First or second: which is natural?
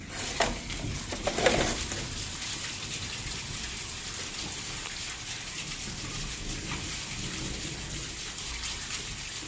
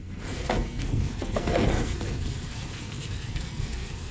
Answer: first